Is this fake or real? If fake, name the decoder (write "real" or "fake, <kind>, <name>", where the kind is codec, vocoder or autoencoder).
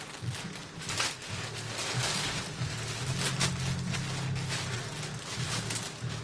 real